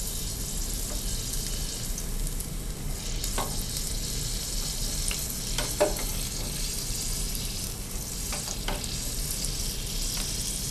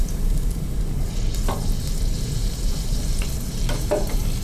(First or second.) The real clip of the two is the first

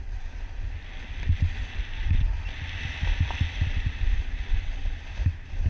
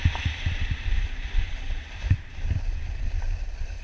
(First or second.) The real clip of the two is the first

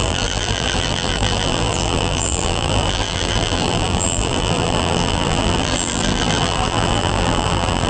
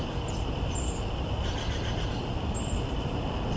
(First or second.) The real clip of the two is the second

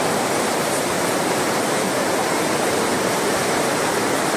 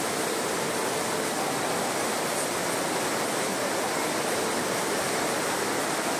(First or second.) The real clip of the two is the second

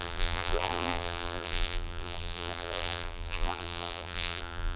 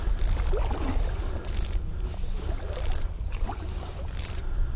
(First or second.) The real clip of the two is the second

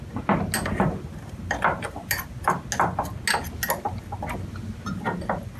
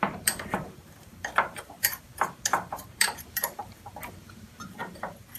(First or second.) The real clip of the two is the first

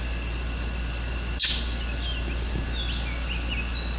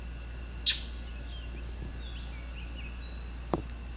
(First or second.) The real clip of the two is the second